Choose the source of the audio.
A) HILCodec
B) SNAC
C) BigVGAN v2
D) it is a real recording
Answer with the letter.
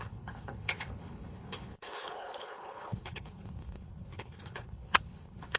A